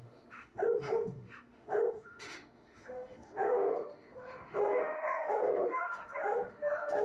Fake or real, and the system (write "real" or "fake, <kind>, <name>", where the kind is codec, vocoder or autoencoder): fake, autoencoder, DAC-VAE